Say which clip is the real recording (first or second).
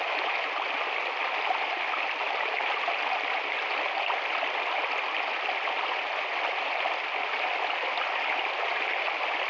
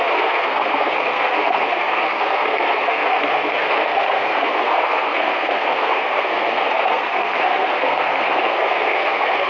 first